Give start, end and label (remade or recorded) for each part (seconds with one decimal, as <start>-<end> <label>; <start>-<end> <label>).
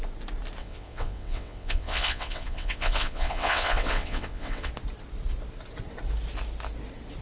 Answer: 0.0-0.6 recorded; 0.6-4.7 remade; 4.7-7.2 recorded